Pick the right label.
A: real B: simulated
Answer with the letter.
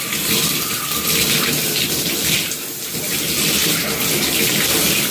A